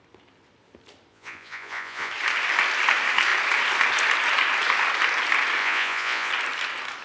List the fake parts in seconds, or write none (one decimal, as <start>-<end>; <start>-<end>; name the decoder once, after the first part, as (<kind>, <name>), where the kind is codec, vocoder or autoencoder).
1.1-2.1 (vocoder, Vocos); 5.6-6.3